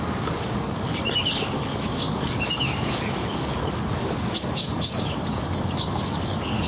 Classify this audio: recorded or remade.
remade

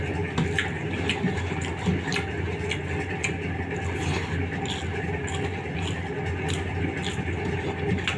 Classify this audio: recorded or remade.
recorded